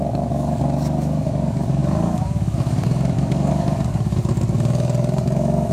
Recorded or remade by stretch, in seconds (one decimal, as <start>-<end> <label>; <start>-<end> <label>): 0.0-5.7 remade